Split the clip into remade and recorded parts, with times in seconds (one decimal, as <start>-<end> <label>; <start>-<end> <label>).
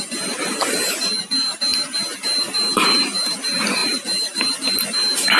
0.0-5.4 recorded